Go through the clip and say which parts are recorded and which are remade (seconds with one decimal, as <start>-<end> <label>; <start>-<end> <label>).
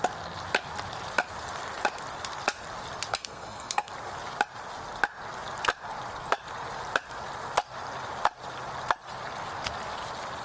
0.0-3.1 recorded; 3.1-3.9 remade; 3.9-10.4 recorded